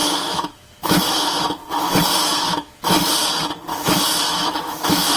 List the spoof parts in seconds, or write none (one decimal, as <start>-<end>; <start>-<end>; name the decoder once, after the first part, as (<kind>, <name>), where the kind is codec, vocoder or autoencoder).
0.0-3.1 (autoencoder, DAC-VAE); 3.7-5.2